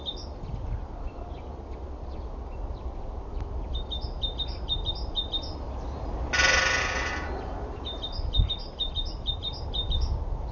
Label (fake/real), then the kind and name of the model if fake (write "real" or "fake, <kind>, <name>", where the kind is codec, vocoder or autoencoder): real